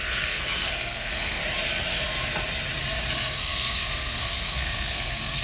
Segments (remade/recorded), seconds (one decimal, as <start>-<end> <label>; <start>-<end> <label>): 0.0-1.4 remade; 1.4-3.1 recorded; 3.1-5.4 remade